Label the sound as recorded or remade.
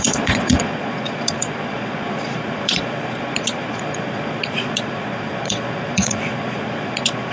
remade